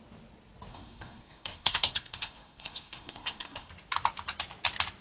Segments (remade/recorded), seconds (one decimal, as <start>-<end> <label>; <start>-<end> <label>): 0.0-0.7 recorded; 0.7-3.7 remade; 3.7-5.0 recorded

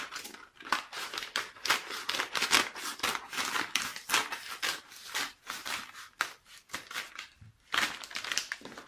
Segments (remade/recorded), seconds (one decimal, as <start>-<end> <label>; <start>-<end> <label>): 0.0-8.9 recorded